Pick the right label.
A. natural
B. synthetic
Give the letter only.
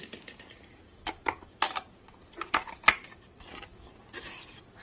A